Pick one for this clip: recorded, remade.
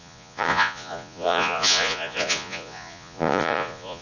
remade